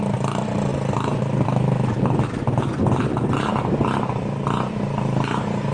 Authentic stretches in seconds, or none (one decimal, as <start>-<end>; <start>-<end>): 0.0-5.7